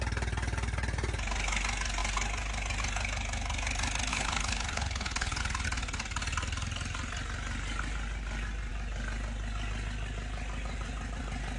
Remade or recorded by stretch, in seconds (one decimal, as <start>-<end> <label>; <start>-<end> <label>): 0.0-4.1 recorded; 4.1-5.4 remade; 5.4-11.6 recorded